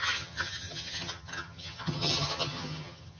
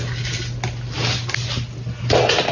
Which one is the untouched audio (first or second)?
second